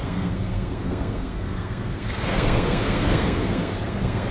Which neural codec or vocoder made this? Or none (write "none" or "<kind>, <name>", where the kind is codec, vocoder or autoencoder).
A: codec, SNAC